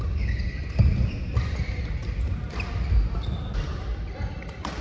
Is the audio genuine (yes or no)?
yes